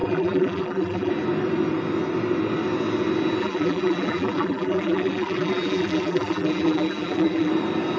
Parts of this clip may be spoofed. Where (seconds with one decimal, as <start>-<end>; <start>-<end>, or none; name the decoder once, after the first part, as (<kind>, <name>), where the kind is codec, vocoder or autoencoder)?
0.0-1.1 (vocoder, BigVGAN v2); 3.4-7.5